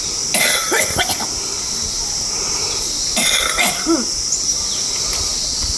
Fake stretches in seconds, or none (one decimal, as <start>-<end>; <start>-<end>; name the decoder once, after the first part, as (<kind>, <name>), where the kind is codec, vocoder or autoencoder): none